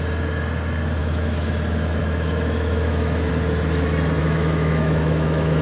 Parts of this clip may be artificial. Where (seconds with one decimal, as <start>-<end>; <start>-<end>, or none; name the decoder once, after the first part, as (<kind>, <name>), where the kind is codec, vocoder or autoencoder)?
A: 1.0-1.5 (autoencoder, DAC-VAE); 2.0-3.3; 4.2-5.6